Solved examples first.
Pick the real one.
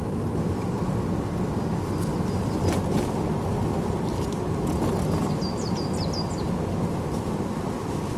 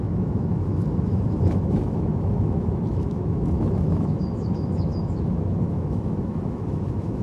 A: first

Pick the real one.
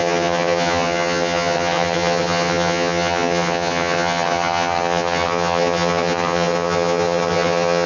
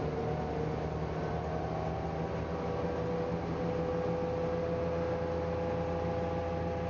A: second